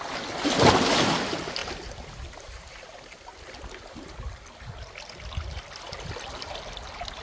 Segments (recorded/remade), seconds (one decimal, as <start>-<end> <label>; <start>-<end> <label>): 0.0-7.2 recorded